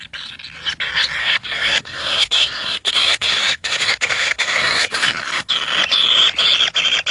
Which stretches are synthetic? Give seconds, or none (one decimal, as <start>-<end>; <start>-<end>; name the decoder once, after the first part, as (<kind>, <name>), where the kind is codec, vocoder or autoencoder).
1.2-5.5 (codec, SNAC)